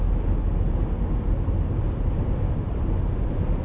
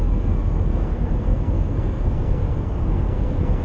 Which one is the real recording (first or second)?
first